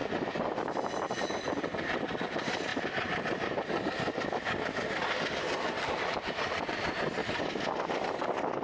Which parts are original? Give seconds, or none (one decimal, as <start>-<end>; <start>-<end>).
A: 0.0-1.1; 2.7-5.4; 7.2-8.0